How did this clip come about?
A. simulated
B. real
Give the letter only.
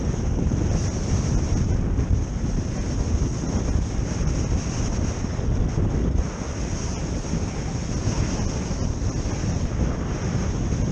B